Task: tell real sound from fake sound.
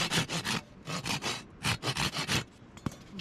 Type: real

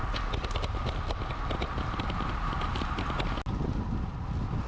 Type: real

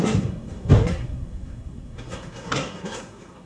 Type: fake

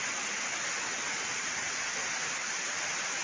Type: real